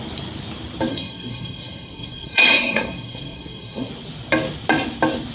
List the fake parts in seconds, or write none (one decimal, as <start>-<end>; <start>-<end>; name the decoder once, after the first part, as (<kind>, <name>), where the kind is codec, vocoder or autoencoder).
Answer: 0.9-3.9 (codec, SNAC)